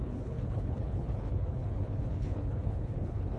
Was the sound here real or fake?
fake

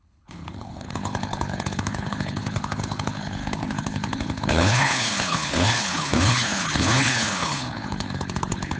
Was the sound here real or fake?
fake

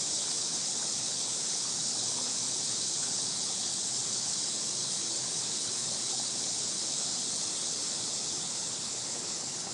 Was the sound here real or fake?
fake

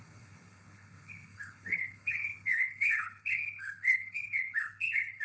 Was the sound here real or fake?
fake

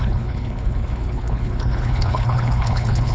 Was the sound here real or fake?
fake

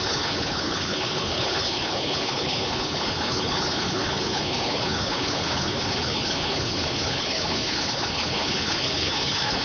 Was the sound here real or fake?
fake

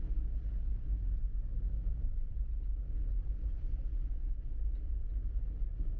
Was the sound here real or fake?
real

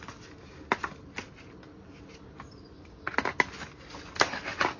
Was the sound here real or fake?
real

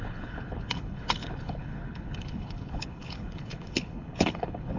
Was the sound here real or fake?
fake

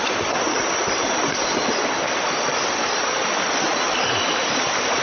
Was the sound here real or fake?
real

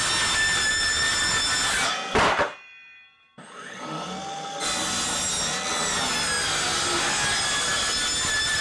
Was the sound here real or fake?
real